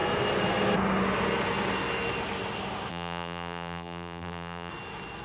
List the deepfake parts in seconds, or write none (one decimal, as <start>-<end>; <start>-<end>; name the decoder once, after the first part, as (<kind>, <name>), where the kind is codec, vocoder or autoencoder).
2.9-4.7 (vocoder, BigVGAN v2)